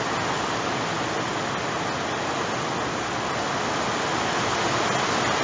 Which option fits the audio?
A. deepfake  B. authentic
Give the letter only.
B